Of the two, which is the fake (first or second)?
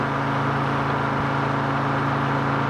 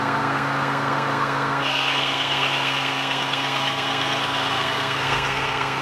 second